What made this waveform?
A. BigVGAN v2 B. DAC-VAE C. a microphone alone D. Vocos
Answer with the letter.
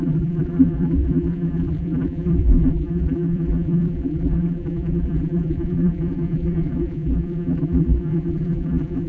A